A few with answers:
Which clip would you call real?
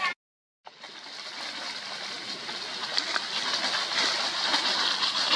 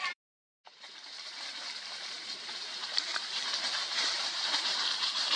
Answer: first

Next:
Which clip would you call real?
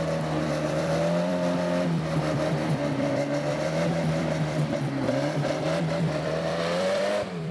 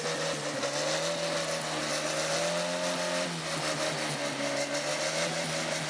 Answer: second